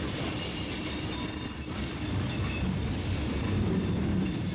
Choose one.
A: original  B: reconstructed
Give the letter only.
A